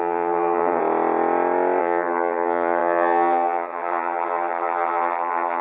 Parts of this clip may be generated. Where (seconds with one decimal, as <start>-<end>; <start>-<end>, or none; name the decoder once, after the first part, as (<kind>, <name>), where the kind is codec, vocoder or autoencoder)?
0.0-0.8 (vocoder, HiFi-GAN); 1.8-5.6